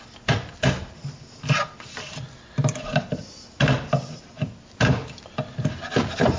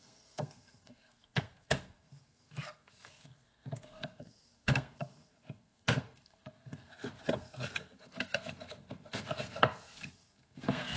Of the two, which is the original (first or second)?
first